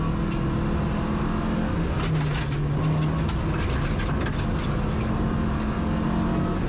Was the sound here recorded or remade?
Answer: recorded